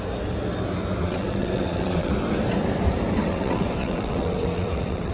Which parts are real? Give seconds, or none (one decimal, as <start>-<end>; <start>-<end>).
0.0-1.0; 2.1-3.2